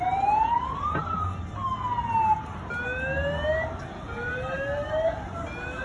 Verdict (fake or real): real